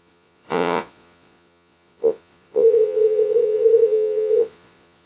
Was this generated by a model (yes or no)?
yes